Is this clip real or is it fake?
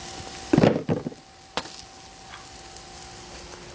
real